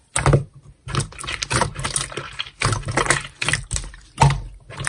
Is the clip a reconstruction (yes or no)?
no